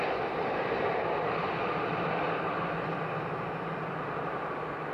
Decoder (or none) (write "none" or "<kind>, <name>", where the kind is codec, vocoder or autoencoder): none